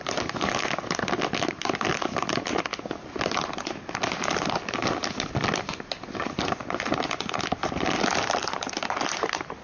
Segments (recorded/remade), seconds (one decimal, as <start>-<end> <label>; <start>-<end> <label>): 0.0-9.6 recorded